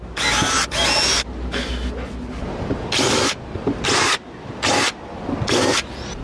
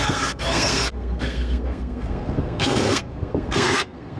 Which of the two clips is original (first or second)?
first